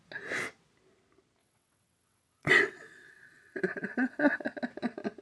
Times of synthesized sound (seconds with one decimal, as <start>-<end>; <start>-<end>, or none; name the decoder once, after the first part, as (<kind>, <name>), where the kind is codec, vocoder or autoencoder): 1.4-4.5 (vocoder, WaveNeXt)